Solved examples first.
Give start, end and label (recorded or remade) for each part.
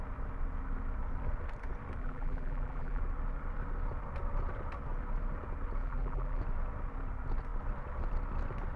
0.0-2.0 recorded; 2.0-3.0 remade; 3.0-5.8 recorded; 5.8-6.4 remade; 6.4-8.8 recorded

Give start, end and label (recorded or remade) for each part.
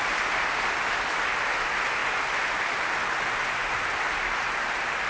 0.0-3.6 recorded; 3.6-5.1 remade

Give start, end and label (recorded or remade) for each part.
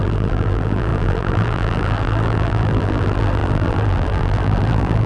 0.0-5.1 remade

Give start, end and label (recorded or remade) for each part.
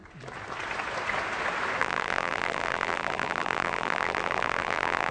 0.0-1.8 recorded; 1.8-5.1 remade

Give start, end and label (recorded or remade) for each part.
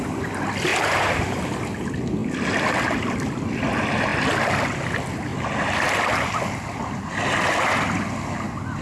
0.0-0.7 recorded; 0.7-1.4 remade; 1.4-8.8 recorded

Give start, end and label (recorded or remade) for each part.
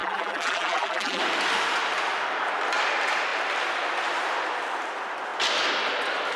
0.0-1.2 remade; 1.2-6.4 recorded